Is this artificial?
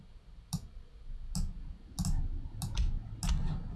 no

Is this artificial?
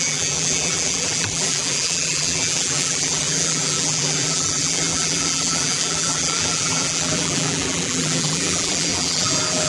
yes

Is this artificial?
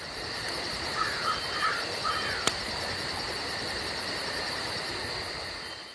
yes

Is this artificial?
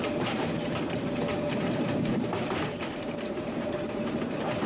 yes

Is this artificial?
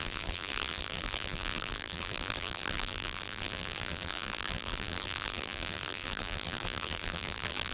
yes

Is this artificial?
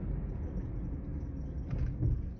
no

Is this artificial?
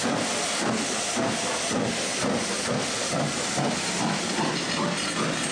no